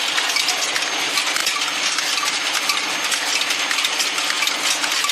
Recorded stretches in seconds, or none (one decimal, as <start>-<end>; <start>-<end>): 0.0-5.1